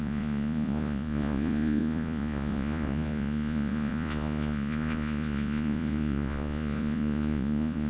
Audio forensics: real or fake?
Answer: fake